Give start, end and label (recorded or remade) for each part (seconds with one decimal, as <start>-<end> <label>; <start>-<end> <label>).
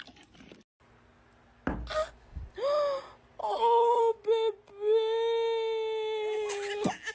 0.0-3.4 recorded; 3.4-4.0 remade; 4.0-7.1 recorded